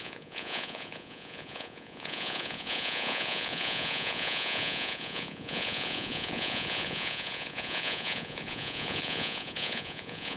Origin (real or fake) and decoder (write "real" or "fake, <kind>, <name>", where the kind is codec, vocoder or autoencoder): fake, vocoder, Vocos